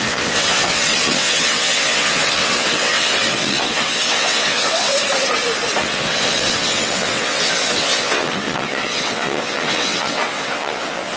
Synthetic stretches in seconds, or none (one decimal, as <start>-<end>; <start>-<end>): 0.0-4.9; 5.8-11.2